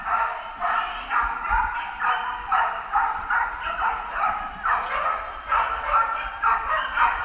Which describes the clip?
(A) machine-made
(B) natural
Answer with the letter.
A